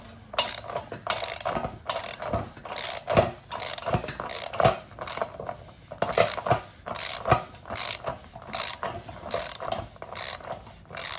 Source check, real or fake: real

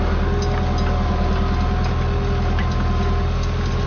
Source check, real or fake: real